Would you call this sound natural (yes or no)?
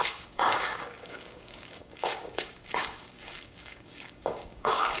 no